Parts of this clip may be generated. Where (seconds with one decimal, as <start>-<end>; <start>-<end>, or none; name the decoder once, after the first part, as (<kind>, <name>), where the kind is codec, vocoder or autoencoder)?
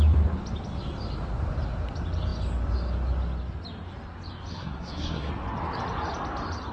4.5-5.3 (codec, SNAC)